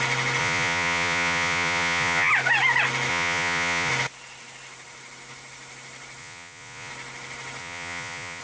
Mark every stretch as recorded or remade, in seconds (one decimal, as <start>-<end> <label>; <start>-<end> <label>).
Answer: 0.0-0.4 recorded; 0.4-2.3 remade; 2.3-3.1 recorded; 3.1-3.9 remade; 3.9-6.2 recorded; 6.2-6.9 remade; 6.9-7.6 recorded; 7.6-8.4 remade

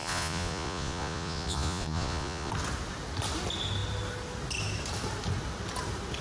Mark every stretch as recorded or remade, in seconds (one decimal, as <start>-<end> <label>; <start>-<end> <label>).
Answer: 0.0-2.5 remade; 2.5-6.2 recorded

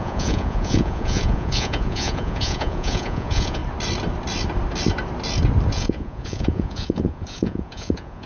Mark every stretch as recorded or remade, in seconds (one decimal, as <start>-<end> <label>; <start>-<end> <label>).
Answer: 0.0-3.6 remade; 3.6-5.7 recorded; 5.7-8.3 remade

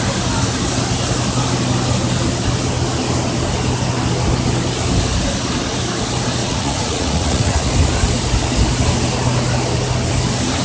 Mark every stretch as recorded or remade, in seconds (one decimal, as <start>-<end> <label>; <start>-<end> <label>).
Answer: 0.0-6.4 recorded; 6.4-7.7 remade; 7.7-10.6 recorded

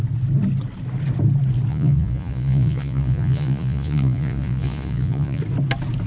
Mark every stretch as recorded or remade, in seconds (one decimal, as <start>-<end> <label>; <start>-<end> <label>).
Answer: 0.0-1.7 recorded; 1.7-5.4 remade; 5.4-6.1 recorded